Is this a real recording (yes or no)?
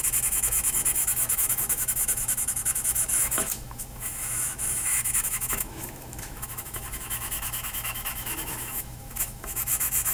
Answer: no